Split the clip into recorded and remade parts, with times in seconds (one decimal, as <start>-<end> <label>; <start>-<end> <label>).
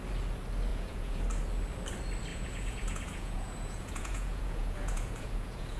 0.0-0.7 recorded; 0.7-1.2 remade; 1.2-2.3 recorded; 2.3-5.8 remade